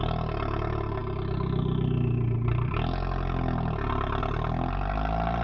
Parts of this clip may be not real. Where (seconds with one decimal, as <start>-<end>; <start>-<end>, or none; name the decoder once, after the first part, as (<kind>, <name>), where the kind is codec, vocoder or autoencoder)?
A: none